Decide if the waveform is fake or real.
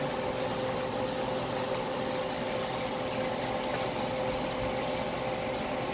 real